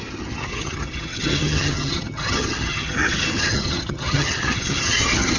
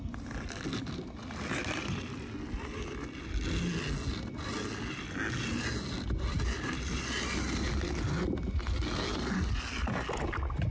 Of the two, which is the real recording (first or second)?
second